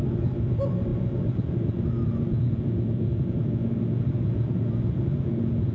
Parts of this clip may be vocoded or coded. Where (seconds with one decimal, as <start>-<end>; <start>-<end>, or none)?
none